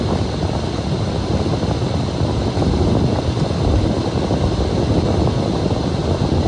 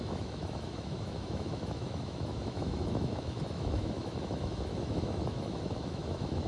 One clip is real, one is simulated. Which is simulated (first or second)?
second